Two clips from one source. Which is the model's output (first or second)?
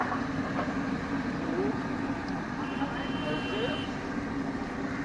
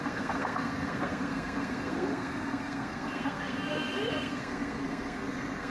second